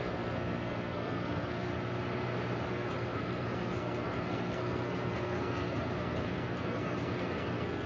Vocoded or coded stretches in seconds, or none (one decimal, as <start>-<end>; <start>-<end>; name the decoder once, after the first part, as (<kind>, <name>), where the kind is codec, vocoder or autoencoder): 0.0-1.7 (codec, SNAC); 2.7-7.9